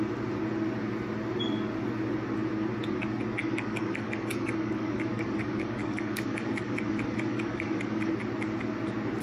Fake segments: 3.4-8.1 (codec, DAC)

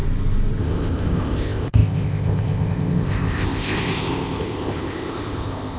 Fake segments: 0.6-5.8 (codec, ZipCodec)

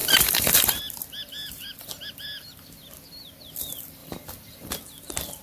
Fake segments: 0.0-0.8 (vocoder, BigVGAN v2); 4.0-4.7